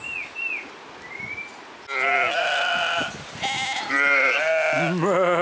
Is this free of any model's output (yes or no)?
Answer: yes